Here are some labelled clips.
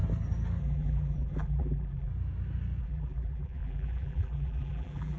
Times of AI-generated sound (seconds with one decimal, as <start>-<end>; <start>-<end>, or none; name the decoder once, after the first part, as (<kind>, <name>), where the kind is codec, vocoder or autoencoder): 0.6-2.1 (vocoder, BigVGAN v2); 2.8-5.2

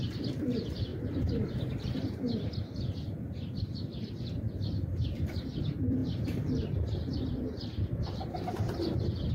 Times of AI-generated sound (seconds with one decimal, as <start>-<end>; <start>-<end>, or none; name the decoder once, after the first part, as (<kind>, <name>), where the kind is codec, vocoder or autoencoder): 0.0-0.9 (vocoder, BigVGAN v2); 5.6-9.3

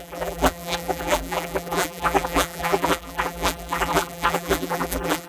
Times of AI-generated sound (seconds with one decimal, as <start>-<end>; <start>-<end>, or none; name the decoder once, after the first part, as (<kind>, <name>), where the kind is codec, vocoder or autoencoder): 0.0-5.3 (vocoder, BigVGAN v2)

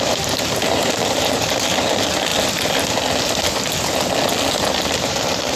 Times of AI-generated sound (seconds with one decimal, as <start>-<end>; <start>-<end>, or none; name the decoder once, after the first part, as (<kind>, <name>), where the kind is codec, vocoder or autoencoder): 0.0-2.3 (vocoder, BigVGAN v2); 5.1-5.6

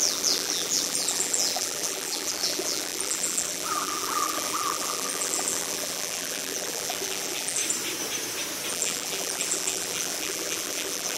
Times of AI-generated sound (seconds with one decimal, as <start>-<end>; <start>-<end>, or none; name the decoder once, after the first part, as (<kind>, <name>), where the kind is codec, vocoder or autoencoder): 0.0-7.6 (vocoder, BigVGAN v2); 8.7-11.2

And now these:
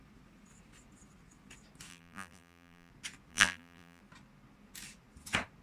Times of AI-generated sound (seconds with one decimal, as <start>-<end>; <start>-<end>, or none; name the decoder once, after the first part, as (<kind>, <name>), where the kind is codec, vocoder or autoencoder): 1.9-2.9 (vocoder, BigVGAN v2); 3.3-4.0

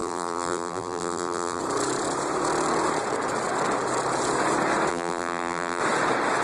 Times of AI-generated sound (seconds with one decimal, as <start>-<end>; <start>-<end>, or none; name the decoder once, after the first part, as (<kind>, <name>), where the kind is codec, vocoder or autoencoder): 0.0-1.6 (vocoder, BigVGAN v2); 4.9-5.8

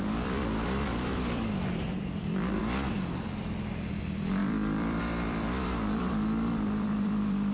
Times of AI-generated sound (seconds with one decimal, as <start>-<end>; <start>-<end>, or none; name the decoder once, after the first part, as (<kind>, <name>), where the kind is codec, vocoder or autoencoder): 0.0-2.6 (vocoder, BigVGAN v2); 4.0-7.5